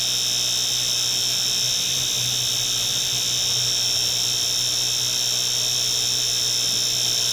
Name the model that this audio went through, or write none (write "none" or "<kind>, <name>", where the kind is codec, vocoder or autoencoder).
none